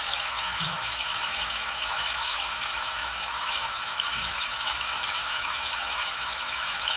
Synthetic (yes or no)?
yes